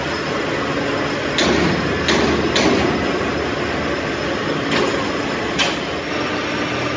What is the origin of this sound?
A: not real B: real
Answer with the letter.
B